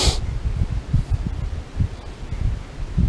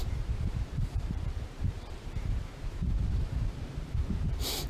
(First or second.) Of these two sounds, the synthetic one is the second